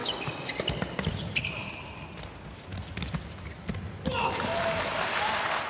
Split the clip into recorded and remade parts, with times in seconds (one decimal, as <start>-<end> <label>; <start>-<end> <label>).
0.0-5.7 recorded